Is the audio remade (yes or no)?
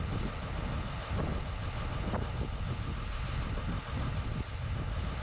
no